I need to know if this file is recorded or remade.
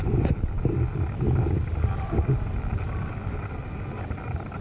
recorded